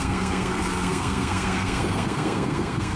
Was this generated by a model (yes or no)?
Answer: yes